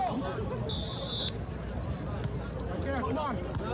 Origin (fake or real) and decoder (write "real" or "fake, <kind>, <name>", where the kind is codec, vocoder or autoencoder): real